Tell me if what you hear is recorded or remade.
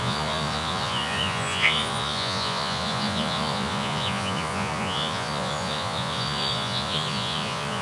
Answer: remade